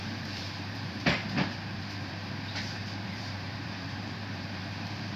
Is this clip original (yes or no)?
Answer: no